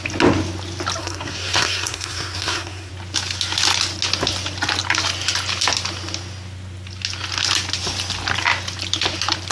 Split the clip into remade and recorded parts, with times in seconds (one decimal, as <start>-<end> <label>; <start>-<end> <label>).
0.0-1.0 recorded; 1.0-2.9 remade; 2.9-9.5 recorded